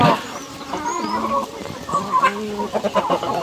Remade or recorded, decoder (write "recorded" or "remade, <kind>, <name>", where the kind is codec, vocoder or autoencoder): recorded